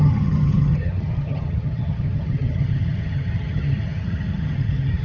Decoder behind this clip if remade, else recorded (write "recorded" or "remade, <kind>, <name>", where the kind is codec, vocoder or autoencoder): remade, vocoder, HiFi-GAN